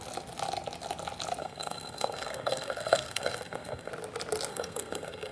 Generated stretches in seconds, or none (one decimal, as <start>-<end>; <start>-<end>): 1.4-3.9; 4.5-5.3